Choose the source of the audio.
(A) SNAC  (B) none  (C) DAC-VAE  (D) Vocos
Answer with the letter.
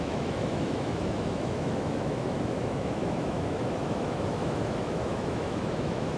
C